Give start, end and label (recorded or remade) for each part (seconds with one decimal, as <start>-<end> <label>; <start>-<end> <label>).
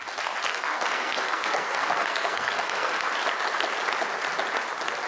0.0-0.5 recorded; 0.5-3.1 remade; 3.1-5.1 recorded